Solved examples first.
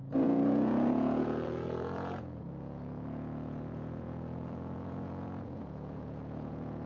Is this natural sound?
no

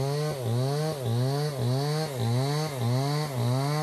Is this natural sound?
yes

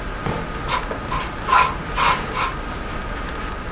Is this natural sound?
yes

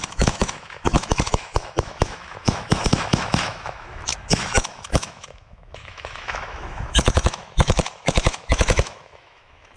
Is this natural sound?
no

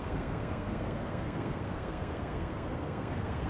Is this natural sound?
no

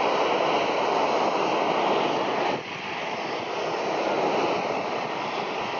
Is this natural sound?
yes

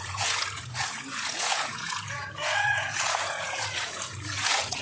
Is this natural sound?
no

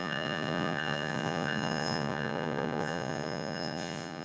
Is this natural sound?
no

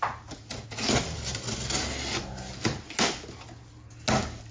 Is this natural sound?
yes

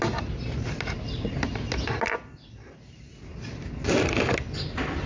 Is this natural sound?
yes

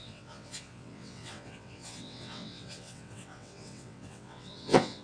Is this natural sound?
no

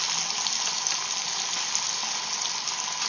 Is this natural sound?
yes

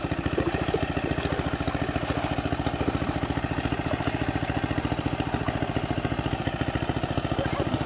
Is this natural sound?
yes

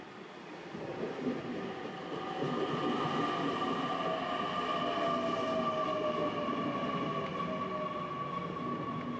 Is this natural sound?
yes